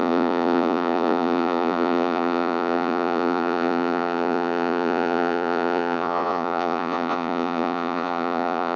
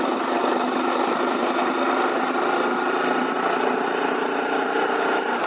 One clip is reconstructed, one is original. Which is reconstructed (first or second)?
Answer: first